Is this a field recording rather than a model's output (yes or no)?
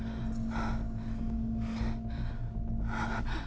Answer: yes